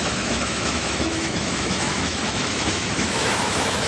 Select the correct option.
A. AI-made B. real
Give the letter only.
A